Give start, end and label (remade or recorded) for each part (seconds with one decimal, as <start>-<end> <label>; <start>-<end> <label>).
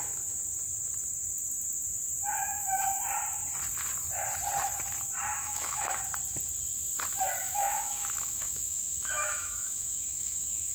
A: 0.0-2.4 recorded; 2.4-3.0 remade; 3.0-5.3 recorded; 5.3-6.0 remade; 6.0-7.4 recorded; 7.4-10.7 remade